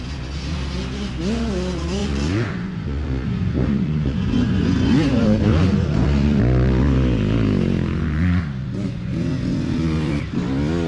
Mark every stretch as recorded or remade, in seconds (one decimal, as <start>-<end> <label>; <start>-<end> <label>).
0.0-2.0 recorded; 2.0-6.4 remade; 6.4-8.6 recorded; 8.6-10.2 remade; 10.2-10.9 recorded